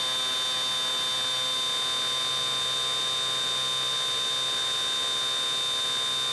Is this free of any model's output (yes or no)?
yes